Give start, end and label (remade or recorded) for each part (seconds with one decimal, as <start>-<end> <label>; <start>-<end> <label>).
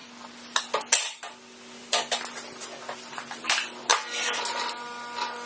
0.0-5.5 recorded